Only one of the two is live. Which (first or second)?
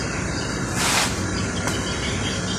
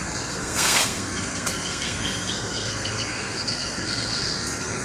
first